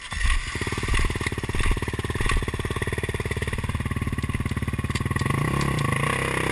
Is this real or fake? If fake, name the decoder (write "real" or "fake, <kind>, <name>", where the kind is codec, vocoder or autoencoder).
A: real